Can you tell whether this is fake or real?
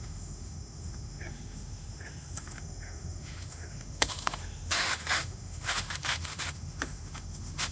fake